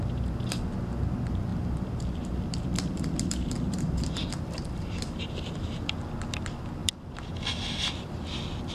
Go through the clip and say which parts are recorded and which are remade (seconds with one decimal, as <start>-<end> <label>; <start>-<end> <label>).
0.0-1.5 recorded; 1.5-6.2 remade; 6.2-6.8 recorded; 6.8-8.7 remade